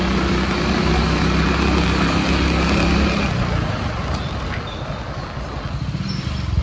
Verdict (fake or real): real